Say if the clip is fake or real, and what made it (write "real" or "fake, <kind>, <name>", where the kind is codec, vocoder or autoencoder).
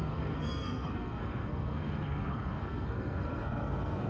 fake, codec, SNAC